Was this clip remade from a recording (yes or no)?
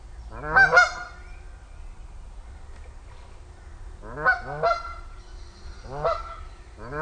no